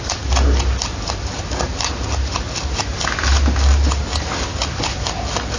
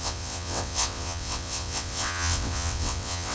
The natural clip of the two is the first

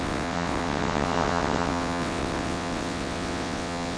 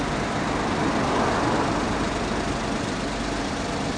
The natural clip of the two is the second